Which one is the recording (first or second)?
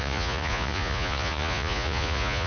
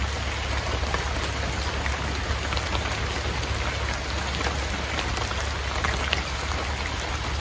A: second